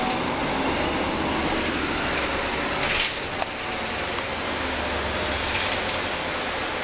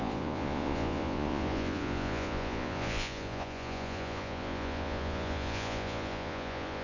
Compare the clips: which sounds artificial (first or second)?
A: second